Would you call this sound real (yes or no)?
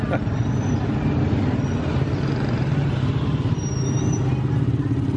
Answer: yes